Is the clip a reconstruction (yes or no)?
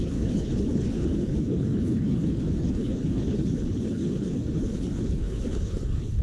yes